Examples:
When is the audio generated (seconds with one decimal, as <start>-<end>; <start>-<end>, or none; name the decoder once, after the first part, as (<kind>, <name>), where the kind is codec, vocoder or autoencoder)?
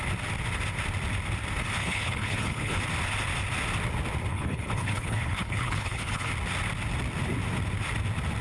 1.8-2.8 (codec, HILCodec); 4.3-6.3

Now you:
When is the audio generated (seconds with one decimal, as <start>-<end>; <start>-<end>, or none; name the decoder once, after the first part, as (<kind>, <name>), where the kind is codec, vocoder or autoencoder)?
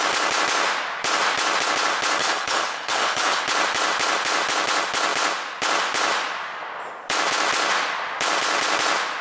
2.2-3.4 (codec, HILCodec)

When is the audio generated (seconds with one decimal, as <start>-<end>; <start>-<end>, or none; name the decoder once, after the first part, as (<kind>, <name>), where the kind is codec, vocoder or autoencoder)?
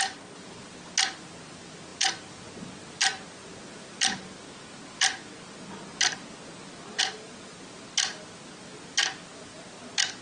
none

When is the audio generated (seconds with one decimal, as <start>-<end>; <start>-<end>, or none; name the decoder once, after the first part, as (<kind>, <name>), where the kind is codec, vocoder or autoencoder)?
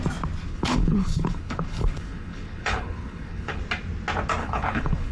0.5-3.6 (codec, HILCodec); 4.4-5.1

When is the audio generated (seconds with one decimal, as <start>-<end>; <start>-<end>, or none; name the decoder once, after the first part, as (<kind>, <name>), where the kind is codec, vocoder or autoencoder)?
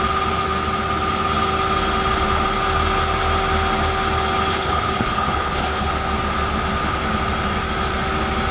4.5-5.9 (codec, HILCodec)